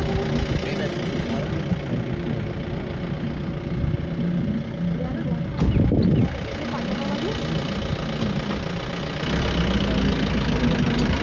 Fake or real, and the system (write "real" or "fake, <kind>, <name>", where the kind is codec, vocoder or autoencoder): real